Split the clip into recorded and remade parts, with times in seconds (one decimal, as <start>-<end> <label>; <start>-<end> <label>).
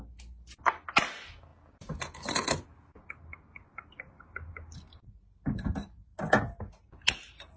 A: 0.0-7.6 recorded